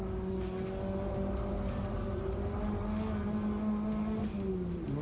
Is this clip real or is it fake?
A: real